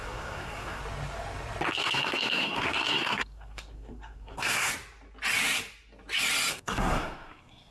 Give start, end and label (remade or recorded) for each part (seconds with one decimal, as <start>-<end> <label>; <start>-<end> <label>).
0.0-0.8 remade; 0.8-1.7 recorded; 1.7-4.7 remade; 4.7-6.5 recorded; 6.5-7.7 remade